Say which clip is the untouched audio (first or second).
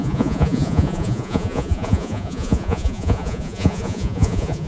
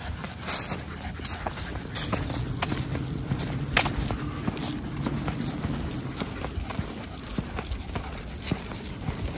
second